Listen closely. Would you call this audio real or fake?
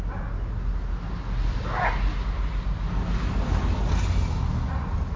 real